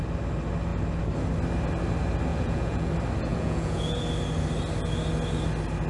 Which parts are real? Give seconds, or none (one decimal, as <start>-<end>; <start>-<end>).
0.0-2.3; 2.9-3.3; 4.0-5.9